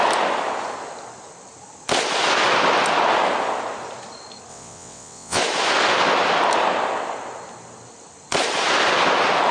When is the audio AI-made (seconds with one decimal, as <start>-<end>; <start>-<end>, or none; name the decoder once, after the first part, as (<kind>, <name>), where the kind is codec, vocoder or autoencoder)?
4.5-5.4 (vocoder, WaveNeXt)